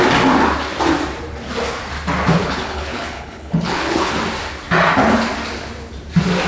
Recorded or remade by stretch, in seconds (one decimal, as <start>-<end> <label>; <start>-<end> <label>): 0.0-2.4 recorded; 2.4-4.1 remade; 4.1-6.5 recorded